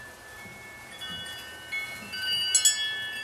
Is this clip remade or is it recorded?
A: recorded